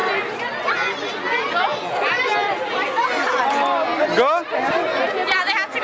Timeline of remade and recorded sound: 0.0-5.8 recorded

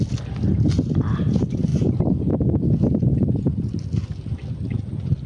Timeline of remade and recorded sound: 0.0-5.3 recorded

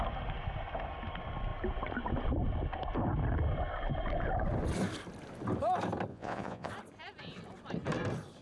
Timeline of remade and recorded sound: 0.0-6.1 recorded; 6.1-6.7 remade; 6.7-8.4 recorded

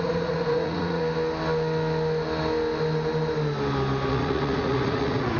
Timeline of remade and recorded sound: 0.0-1.0 remade; 1.0-4.1 recorded; 4.1-5.4 remade

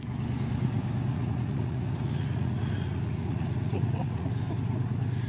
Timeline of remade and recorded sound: 0.0-1.1 recorded; 1.1-4.3 remade; 4.3-5.3 recorded